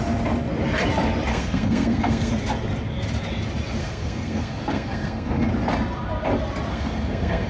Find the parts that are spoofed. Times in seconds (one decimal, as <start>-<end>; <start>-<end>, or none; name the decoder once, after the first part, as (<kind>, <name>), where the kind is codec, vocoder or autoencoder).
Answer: 1.3-2.3 (codec, SNAC); 3.8-5.5; 6.7-7.5